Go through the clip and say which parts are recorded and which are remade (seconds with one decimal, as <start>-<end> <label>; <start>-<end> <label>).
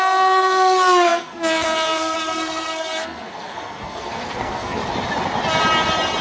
0.0-4.8 remade; 4.8-6.2 recorded